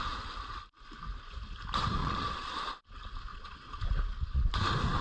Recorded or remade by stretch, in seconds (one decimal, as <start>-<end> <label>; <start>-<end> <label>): 0.0-2.0 recorded; 2.0-2.6 remade; 2.6-3.3 recorded; 3.3-3.8 remade; 3.8-5.0 recorded